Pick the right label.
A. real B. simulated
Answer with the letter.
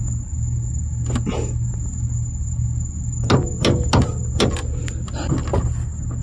A